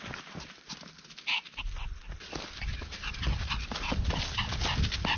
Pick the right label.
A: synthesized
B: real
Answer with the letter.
B